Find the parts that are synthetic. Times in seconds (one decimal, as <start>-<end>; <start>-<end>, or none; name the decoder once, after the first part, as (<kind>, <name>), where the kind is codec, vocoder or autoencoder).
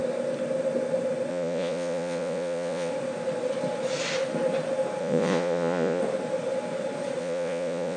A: 1.3-2.9 (vocoder, Vocos); 5.0-6.0; 7.2-8.0